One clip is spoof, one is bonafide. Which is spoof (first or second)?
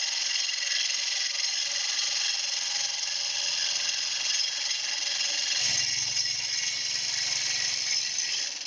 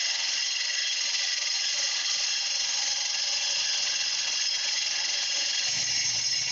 second